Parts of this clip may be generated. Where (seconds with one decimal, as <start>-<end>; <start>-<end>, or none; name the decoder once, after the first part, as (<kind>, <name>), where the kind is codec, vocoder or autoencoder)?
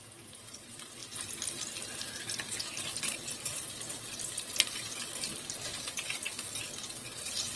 1.0-5.4 (vocoder, BigVGAN v2)